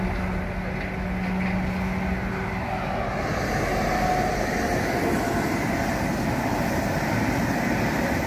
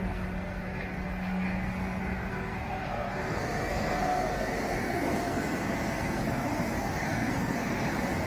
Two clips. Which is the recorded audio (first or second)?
first